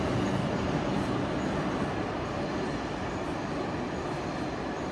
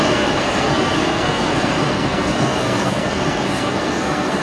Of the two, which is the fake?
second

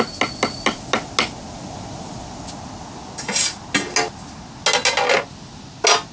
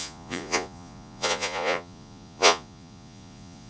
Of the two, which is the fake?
second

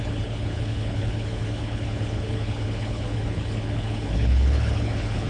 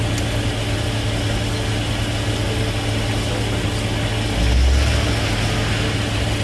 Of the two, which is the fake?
first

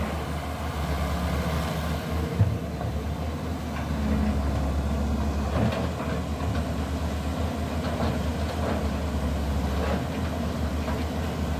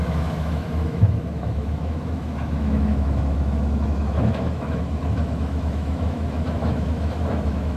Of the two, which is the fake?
second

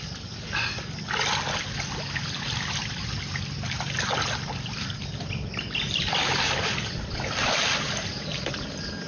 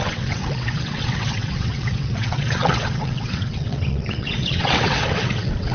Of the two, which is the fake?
second